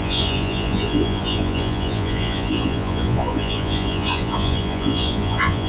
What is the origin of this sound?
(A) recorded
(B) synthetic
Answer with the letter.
B